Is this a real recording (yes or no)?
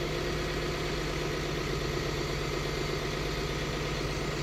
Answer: yes